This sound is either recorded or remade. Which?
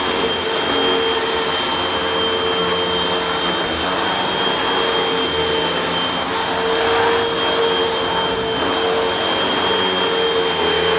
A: recorded